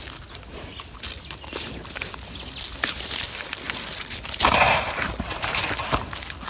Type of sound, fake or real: real